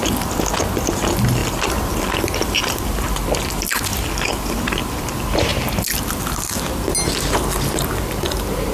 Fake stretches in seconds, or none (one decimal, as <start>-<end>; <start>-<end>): 1.4-3.8; 4.3-4.8